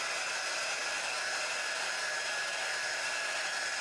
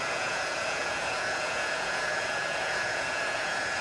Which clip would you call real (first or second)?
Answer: first